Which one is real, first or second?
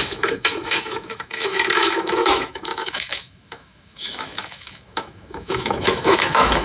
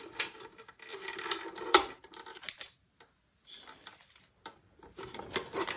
second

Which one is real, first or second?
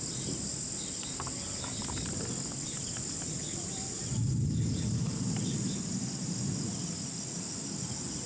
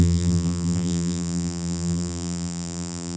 first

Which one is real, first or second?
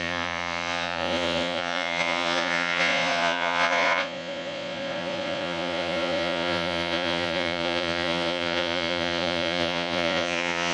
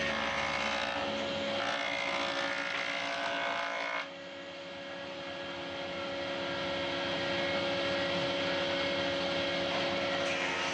second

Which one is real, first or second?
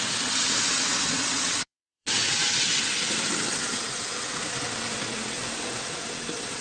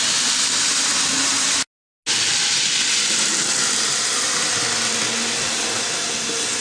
second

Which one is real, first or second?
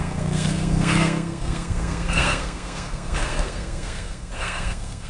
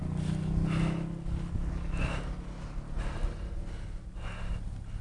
second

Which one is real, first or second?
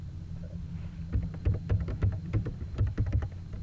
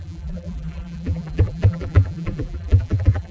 first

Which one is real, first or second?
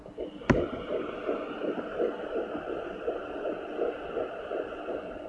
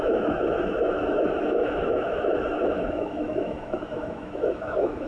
first